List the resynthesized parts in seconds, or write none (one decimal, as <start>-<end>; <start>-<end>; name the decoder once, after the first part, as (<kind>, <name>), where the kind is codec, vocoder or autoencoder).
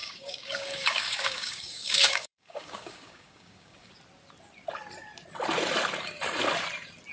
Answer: 0.0-3.9 (codec, DAC)